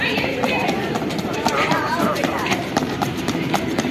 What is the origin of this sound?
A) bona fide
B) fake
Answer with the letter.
B